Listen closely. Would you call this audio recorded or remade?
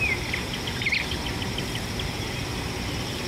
recorded